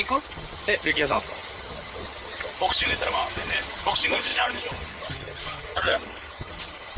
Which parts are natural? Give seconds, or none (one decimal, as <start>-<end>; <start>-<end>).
none